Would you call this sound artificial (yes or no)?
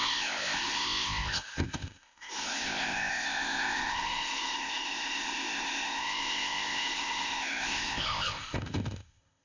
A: yes